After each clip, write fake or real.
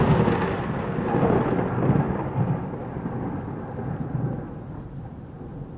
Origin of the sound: real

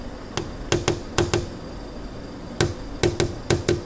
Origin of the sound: real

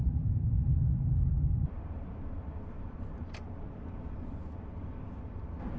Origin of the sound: fake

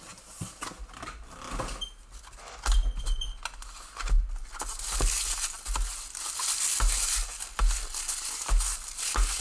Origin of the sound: real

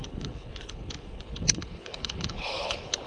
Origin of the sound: fake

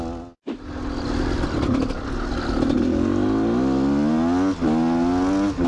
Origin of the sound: real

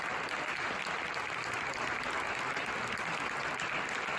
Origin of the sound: real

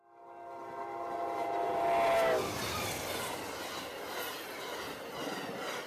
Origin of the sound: real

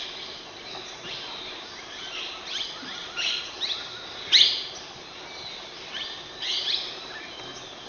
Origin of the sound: real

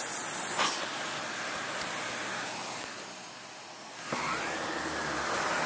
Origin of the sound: real